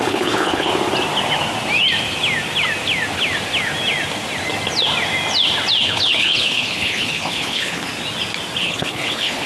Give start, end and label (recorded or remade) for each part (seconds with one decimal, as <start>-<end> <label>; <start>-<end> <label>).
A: 0.0-0.7 remade; 0.7-5.8 recorded; 5.8-7.9 remade; 7.9-8.6 recorded; 8.6-9.5 remade

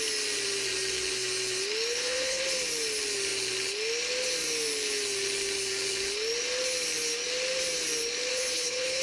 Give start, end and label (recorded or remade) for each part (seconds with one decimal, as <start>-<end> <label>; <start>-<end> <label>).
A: 0.0-1.9 recorded; 1.9-2.4 remade; 2.4-8.3 recorded; 8.3-9.0 remade

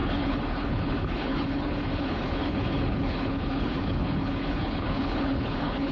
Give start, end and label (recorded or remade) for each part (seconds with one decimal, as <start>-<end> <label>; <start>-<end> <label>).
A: 0.0-5.9 remade

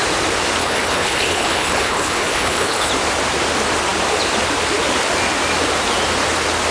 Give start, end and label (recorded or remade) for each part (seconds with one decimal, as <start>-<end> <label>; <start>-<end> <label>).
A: 0.0-0.6 recorded; 0.6-2.9 remade; 2.9-6.7 recorded

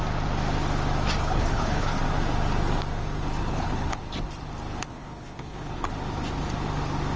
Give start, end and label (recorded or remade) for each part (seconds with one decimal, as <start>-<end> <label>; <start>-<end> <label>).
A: 0.0-1.2 recorded; 1.2-2.0 remade; 2.0-3.4 recorded; 3.4-4.0 remade; 4.0-4.8 recorded; 4.8-5.9 remade; 5.9-7.2 recorded

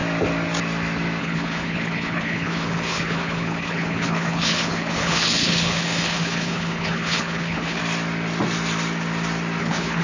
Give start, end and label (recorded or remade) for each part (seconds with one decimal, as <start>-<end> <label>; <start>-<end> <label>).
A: 0.0-1.2 recorded; 1.2-7.8 remade; 7.8-9.6 recorded; 9.6-10.0 remade

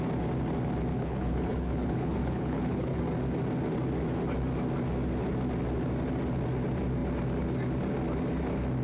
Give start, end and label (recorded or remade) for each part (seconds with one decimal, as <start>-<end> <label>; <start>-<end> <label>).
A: 0.0-0.9 recorded; 0.9-3.0 remade; 3.0-8.8 recorded

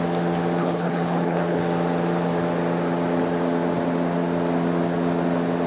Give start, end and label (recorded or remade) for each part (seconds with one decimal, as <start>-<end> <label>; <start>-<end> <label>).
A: 0.0-0.6 recorded; 0.6-1.6 remade; 1.6-5.7 recorded